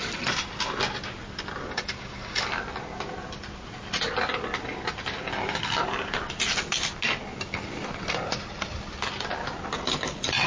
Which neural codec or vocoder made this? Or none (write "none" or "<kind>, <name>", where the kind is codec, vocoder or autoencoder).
none